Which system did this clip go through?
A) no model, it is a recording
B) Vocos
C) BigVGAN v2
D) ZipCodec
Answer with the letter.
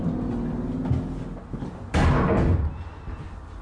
A